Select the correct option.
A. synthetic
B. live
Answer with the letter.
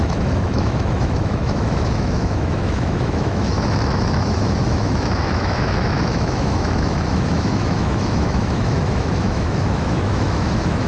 A